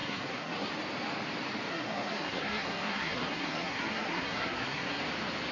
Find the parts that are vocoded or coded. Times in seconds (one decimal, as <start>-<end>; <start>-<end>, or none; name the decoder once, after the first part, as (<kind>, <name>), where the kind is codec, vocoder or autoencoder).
0.0-0.7 (codec, SNAC); 1.7-5.0